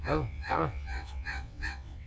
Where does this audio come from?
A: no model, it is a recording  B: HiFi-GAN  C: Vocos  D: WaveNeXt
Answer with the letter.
D